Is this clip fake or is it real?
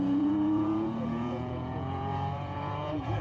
fake